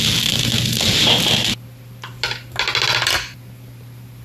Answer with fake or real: real